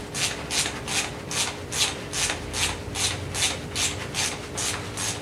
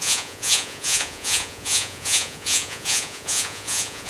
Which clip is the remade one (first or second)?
second